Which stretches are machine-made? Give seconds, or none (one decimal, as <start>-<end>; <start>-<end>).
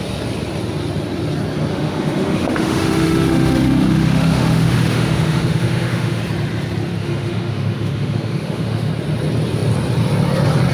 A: 1.7-6.2; 7.0-8.9